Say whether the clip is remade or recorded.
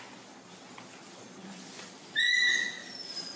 recorded